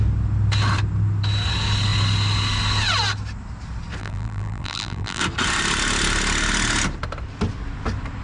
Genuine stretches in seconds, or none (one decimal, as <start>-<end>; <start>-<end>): 0.0-4.0; 5.2-8.2